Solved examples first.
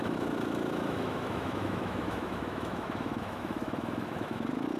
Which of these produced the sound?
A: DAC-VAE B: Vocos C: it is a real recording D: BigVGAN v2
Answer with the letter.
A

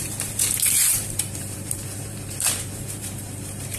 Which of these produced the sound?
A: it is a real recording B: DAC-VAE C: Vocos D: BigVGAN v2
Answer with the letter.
D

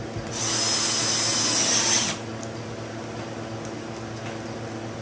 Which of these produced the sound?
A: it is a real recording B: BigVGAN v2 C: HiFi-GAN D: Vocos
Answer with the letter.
A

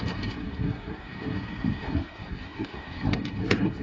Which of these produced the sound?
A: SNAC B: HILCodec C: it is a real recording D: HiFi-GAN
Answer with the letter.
A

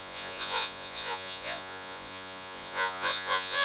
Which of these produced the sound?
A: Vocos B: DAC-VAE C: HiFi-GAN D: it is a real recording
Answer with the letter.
A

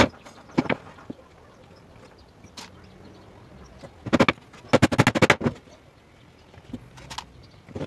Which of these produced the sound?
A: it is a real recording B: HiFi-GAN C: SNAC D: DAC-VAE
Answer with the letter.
A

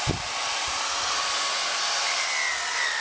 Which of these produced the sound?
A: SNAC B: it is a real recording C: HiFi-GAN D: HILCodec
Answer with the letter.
B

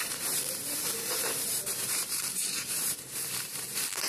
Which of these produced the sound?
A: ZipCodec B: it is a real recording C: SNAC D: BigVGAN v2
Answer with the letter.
D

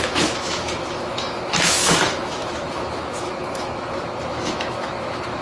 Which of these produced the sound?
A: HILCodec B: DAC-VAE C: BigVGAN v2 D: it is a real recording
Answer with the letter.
B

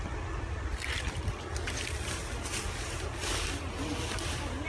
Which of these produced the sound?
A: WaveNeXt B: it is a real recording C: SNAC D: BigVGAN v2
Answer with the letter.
B